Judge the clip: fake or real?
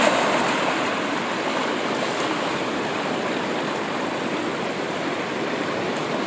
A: real